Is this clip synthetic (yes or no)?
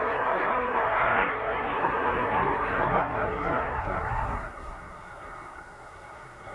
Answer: yes